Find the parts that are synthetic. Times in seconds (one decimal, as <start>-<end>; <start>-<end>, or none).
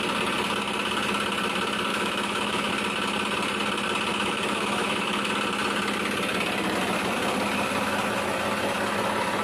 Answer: 1.9-2.7; 4.1-5.3